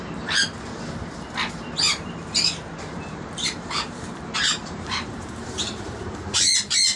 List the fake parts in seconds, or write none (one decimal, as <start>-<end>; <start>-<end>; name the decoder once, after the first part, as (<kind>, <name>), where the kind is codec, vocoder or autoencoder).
2.7-6.5 (vocoder, BigVGAN v2)